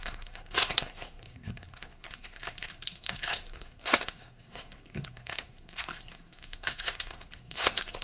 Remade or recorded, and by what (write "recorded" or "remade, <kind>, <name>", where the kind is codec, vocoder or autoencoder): remade, codec, SNAC